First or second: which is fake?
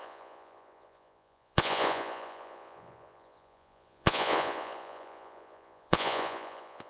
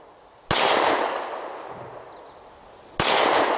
first